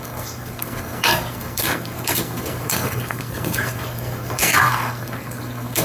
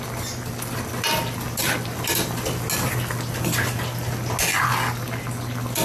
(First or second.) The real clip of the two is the second